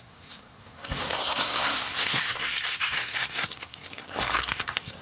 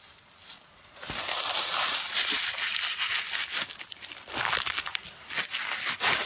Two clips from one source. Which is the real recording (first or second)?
second